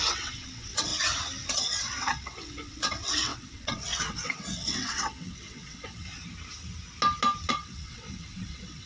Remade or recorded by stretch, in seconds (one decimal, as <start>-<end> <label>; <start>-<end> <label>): 0.0-0.9 remade; 0.9-1.5 recorded; 1.5-6.2 remade; 6.2-7.5 recorded; 7.5-8.9 remade